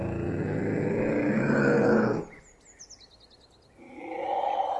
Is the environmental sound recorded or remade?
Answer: recorded